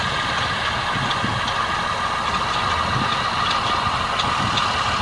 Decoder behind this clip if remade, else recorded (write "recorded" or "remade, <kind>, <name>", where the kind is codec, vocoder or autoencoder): recorded